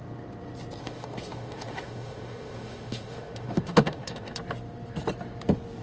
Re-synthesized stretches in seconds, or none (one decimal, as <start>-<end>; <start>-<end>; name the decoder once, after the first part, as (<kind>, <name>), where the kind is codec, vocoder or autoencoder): 0.8-4.3 (autoencoder, DAC-VAE)